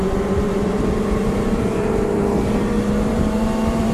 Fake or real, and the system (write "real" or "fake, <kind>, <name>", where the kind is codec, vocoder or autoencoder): fake, vocoder, BigVGAN v2